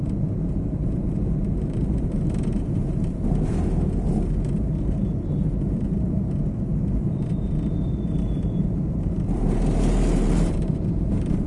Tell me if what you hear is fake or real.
fake